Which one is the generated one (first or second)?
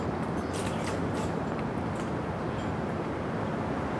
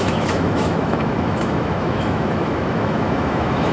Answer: second